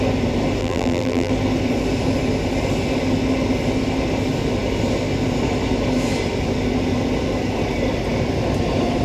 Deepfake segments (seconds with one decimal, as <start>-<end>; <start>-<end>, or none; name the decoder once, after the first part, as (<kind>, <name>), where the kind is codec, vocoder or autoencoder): 0.6-1.3 (vocoder, BigVGAN v2)